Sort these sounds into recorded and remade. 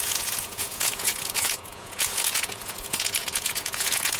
remade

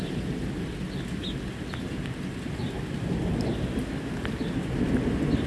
recorded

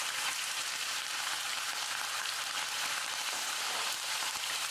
remade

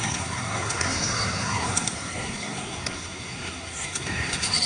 remade